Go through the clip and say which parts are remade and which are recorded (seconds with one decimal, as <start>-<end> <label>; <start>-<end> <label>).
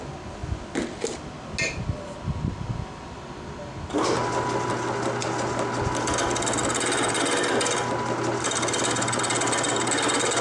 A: 0.0-10.4 recorded